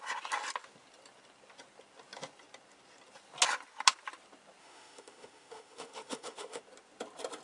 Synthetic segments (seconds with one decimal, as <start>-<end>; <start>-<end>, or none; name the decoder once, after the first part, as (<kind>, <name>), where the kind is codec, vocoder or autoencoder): 4.6-6.6 (autoencoder, DAC-VAE)